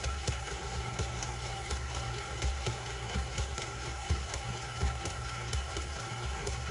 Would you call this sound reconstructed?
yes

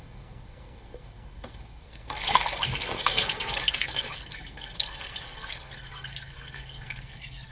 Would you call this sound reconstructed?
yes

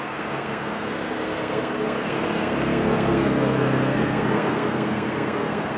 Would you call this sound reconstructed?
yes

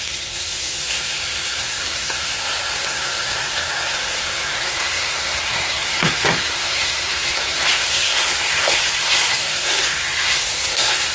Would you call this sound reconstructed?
yes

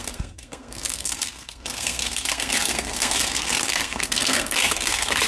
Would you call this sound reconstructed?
yes